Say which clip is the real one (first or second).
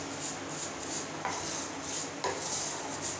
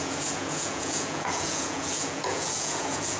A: first